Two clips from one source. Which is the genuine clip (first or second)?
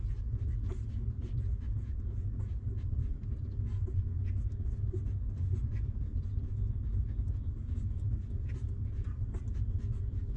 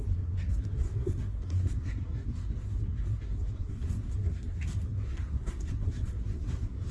first